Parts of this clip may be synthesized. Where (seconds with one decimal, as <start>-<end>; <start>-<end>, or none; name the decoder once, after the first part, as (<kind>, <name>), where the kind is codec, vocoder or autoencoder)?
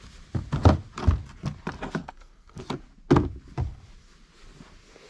2.0-2.6 (codec, SNAC)